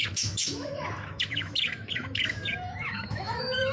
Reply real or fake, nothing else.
fake